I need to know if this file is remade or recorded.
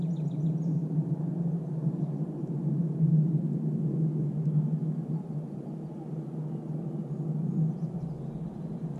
recorded